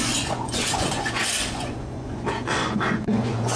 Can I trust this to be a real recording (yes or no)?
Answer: no